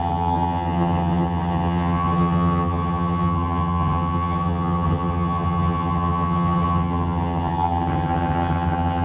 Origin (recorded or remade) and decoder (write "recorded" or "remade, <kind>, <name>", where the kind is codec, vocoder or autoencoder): remade, vocoder, HiFi-GAN